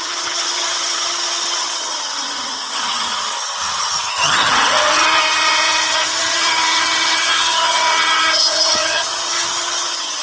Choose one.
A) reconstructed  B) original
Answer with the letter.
A